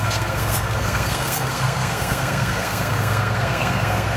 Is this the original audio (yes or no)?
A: no